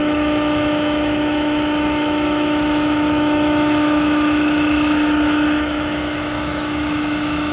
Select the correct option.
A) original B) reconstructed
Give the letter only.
B